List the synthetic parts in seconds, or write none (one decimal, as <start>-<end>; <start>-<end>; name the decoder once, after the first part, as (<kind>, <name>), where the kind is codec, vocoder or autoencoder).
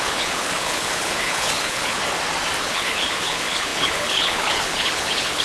0.0-2.0 (codec, HILCodec); 2.6-5.4